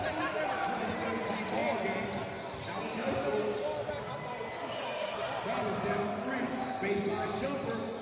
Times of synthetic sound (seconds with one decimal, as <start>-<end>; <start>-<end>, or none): none